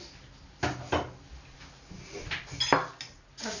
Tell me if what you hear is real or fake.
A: real